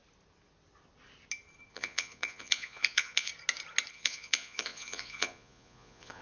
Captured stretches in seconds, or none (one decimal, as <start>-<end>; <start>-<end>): 0.0-1.7; 3.3-3.9